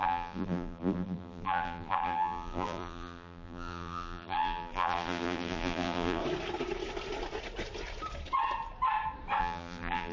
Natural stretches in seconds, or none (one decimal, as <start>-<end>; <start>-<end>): 6.2-9.4